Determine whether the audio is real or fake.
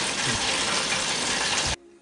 real